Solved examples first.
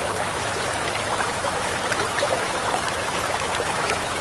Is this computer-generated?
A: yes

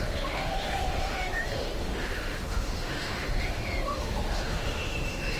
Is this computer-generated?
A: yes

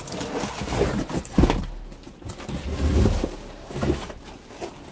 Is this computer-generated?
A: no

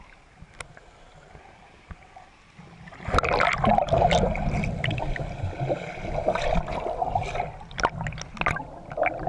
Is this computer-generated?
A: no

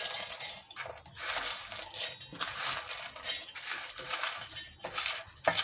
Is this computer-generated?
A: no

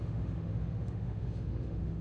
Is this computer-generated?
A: yes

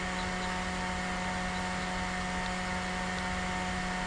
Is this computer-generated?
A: no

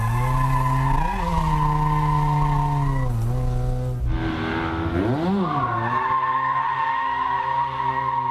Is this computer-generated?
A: no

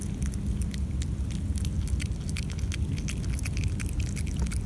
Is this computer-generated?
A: no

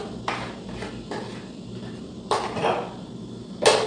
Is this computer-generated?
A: no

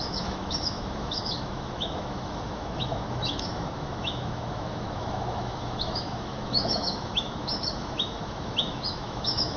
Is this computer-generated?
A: yes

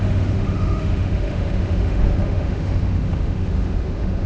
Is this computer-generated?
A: yes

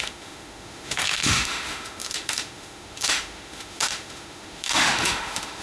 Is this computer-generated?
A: yes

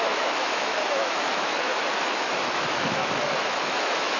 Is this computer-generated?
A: yes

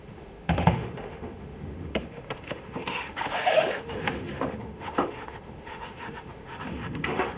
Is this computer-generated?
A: yes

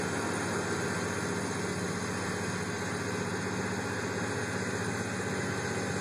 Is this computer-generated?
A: no